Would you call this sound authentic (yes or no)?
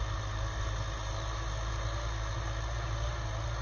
yes